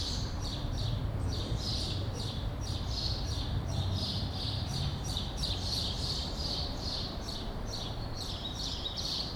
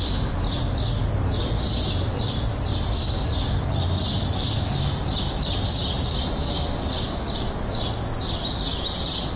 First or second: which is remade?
first